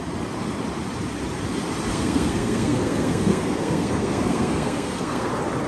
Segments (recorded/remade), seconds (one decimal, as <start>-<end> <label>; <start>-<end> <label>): 0.0-1.9 recorded; 1.9-5.3 remade; 5.3-5.7 recorded